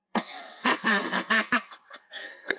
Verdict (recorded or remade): remade